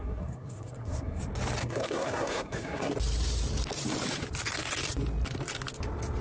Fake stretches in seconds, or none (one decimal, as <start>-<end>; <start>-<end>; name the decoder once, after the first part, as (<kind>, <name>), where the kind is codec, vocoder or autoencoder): 0.0-1.2 (codec, SNAC); 1.6-2.9